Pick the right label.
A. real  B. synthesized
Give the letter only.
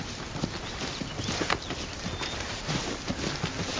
A